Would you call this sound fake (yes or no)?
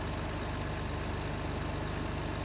no